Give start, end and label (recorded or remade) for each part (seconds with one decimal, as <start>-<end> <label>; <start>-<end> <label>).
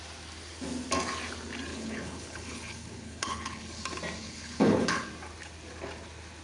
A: 0.0-1.7 recorded; 1.7-3.8 remade; 3.8-4.2 recorded; 4.2-5.1 remade; 5.1-6.4 recorded